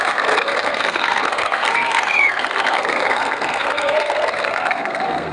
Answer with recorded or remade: remade